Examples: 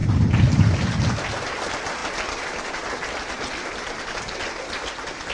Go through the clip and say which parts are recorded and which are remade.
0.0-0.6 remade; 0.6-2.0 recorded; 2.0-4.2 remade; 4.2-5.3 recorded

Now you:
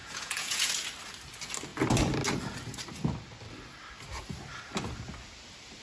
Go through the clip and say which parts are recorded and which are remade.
0.0-0.7 remade; 0.7-5.8 recorded

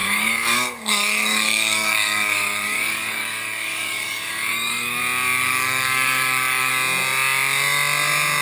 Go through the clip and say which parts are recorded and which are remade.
0.0-5.0 remade; 5.0-5.4 recorded; 5.4-6.7 remade; 6.7-8.4 recorded

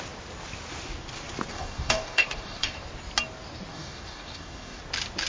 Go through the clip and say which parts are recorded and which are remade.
0.0-1.5 recorded; 1.5-2.7 remade; 2.7-3.7 recorded; 3.7-4.8 remade; 4.8-5.3 recorded

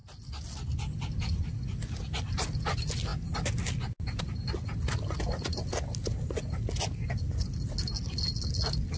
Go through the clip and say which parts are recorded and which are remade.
0.0-9.0 recorded

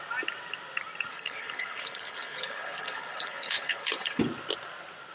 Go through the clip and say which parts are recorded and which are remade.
0.0-1.1 recorded; 1.1-4.2 remade; 4.2-5.1 recorded

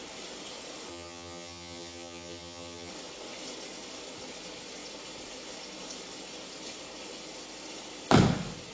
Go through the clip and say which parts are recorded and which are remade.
0.0-0.9 recorded; 0.9-2.9 remade; 2.9-8.7 recorded